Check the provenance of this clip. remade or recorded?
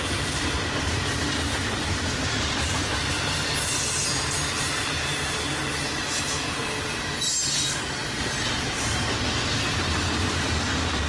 recorded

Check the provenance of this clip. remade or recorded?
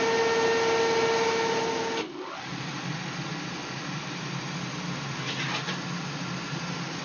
recorded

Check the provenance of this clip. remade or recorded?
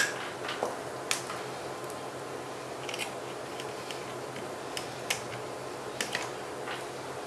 recorded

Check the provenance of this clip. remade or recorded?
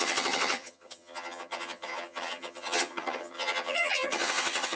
remade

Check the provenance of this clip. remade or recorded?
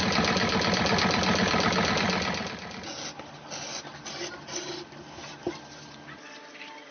recorded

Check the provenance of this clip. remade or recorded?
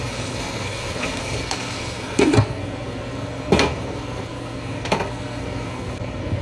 remade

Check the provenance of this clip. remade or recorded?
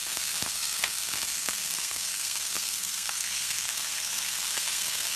remade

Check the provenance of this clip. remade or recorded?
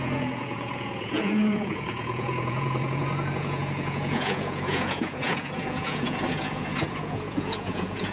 remade